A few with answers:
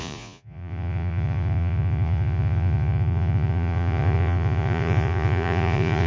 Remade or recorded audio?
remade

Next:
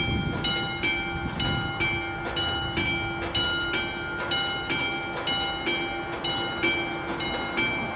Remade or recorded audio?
recorded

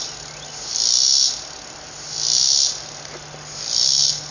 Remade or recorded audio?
recorded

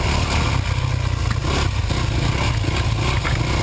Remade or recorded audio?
recorded